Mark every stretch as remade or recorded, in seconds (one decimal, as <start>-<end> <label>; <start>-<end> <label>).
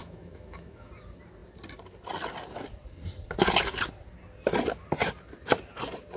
0.0-0.9 remade; 0.9-6.2 recorded